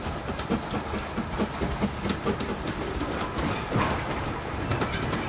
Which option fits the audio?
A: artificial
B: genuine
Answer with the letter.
B